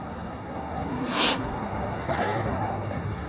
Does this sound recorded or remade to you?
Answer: remade